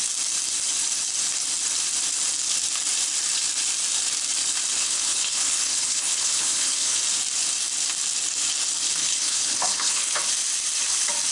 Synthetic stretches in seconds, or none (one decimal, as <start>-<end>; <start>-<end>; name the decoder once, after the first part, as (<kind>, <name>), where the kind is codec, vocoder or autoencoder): 4.8-7.0 (codec, HILCodec); 9.0-10.2